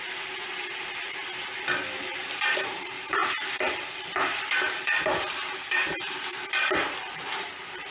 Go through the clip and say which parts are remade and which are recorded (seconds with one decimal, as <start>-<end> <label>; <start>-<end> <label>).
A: 0.0-7.9 remade